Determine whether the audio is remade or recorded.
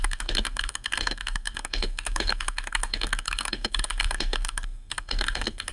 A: remade